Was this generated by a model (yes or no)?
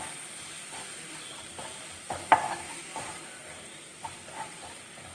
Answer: no